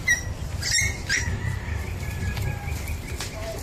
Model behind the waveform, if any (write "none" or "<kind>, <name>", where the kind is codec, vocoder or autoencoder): vocoder, BigVGAN v2